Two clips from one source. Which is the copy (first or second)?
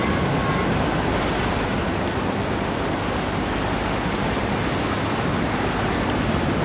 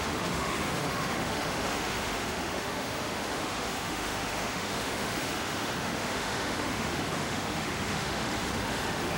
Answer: second